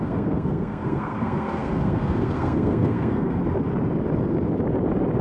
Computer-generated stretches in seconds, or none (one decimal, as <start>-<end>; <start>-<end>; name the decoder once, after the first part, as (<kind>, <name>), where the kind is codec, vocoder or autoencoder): 0.0-3.4 (codec, SNAC)